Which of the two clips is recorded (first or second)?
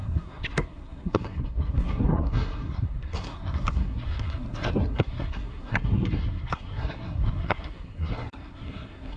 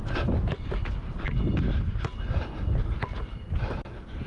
second